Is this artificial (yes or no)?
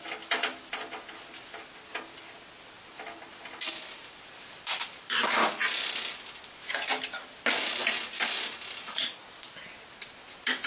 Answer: no